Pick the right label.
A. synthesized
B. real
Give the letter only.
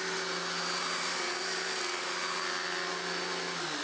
B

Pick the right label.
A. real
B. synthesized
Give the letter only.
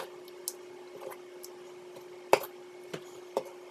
A